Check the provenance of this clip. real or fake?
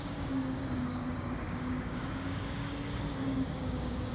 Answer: fake